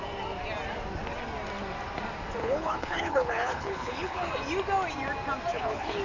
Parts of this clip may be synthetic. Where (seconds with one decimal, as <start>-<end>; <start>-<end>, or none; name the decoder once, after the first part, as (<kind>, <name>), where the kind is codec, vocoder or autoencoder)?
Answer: 2.4-4.3 (codec, HILCodec); 5.5-6.0